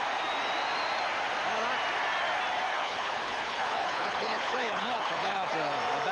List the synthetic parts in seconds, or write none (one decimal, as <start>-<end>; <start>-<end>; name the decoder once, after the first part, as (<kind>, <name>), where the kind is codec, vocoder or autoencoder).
2.7-5.5 (codec, HILCodec)